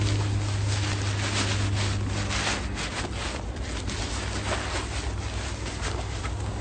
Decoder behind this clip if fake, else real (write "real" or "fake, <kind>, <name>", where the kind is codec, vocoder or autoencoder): real